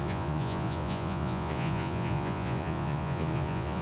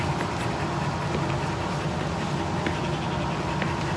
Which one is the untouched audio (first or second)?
second